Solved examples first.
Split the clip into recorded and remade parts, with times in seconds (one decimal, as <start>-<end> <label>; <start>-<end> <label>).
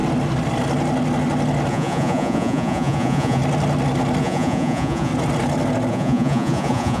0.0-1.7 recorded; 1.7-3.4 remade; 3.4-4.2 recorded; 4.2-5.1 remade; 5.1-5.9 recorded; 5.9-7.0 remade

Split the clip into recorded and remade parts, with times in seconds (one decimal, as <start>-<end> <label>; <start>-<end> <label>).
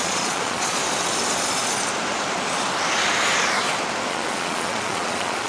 0.0-0.8 remade; 0.8-4.1 recorded; 4.1-5.5 remade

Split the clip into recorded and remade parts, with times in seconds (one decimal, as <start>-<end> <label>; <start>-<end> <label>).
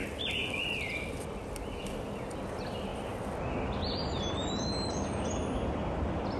0.0-6.4 recorded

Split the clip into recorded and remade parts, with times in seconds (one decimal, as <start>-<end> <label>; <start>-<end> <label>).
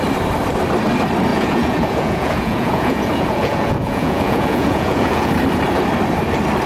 0.0-1.3 recorded; 1.3-5.3 remade; 5.3-6.7 recorded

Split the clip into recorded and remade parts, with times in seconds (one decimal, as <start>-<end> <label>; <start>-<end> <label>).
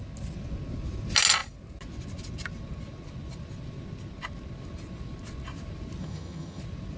0.0-6.0 recorded; 6.0-6.6 remade; 6.6-7.0 recorded